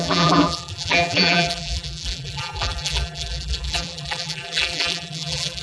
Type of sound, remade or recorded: remade